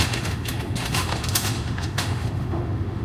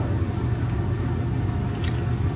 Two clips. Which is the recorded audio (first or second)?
second